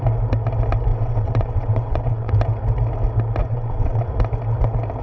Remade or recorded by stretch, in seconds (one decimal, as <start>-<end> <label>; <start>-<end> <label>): 0.0-0.9 recorded; 0.9-2.3 remade; 2.3-3.4 recorded; 3.4-4.1 remade; 4.1-5.0 recorded